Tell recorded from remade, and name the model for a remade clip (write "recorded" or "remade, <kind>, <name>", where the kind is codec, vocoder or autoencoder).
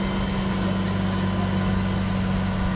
recorded